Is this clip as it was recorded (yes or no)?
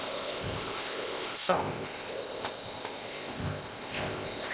no